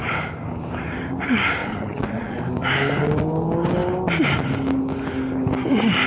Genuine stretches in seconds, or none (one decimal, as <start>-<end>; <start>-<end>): 0.0-1.6; 2.4-6.1